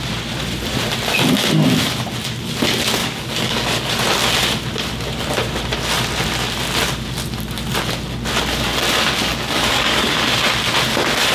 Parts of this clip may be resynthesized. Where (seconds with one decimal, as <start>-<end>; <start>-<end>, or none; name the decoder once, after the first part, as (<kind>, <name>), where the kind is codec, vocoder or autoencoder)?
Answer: 3.0-3.9 (codec, DAC); 9.2-10.1